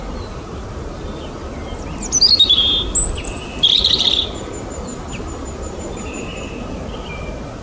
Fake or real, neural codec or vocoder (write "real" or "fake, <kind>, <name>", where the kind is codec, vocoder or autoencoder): real